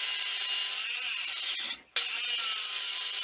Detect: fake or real real